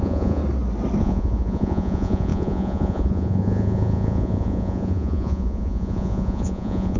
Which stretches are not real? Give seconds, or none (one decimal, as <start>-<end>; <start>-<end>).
0.0-0.4; 1.0-7.0